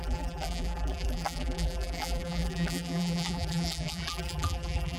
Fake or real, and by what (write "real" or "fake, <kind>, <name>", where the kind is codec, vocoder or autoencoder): fake, vocoder, BigVGAN v2